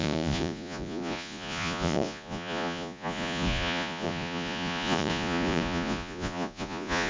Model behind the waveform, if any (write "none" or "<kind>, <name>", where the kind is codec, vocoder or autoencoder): vocoder, Vocos